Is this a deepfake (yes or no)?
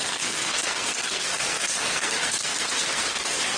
yes